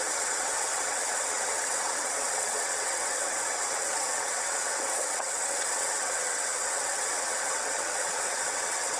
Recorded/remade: remade